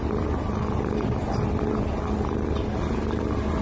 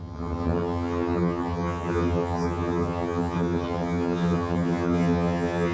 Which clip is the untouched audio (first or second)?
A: first